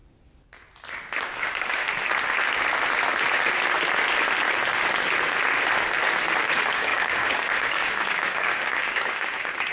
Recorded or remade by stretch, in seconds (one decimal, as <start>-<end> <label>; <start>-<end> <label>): 0.0-1.2 recorded; 1.2-1.8 remade; 1.8-6.4 recorded; 6.4-9.7 remade